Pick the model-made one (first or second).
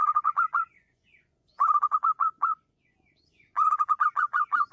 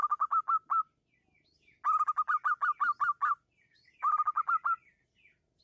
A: first